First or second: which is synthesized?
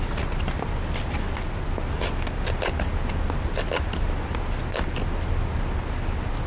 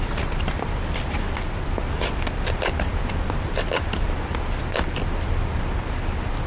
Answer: second